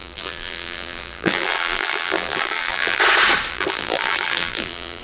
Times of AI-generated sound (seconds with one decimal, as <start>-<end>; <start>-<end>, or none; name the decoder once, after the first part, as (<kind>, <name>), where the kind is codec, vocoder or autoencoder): 0.0-3.0 (vocoder, BigVGAN v2); 3.5-5.0